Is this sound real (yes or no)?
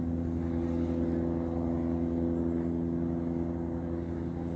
yes